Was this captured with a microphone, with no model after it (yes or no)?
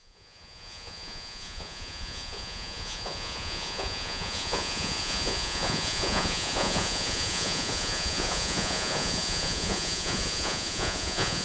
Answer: no